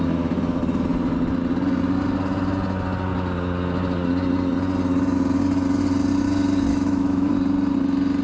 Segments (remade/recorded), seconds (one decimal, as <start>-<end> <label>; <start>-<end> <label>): 0.0-6.7 recorded; 6.7-7.3 remade; 7.3-8.2 recorded